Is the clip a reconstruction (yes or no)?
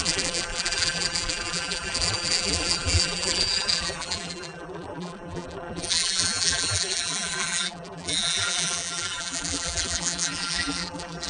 yes